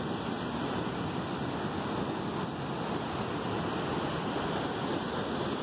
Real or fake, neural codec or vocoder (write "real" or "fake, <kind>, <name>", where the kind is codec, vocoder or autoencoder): real